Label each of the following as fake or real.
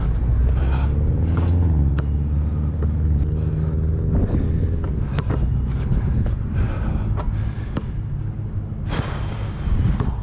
real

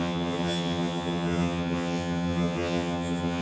fake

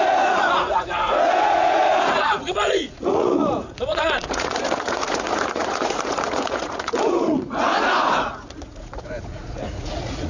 fake